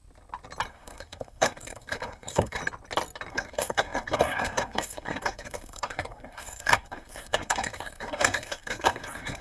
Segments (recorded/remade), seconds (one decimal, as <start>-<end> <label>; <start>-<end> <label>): 0.0-0.7 recorded; 0.7-2.6 remade; 2.6-3.3 recorded; 3.3-9.4 remade